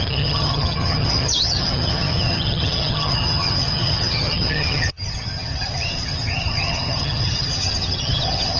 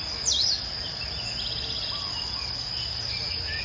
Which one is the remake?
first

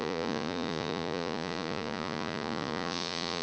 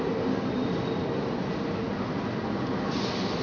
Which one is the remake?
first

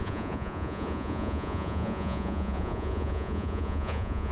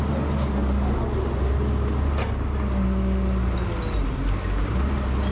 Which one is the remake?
first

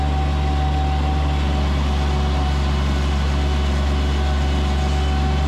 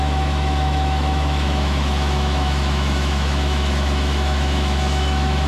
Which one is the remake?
second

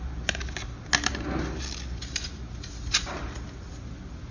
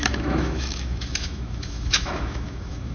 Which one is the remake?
second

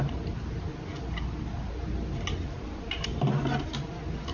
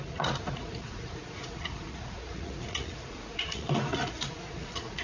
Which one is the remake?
second